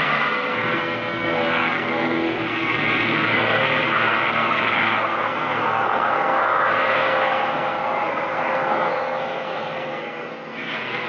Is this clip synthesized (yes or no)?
yes